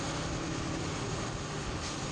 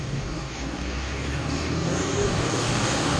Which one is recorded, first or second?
first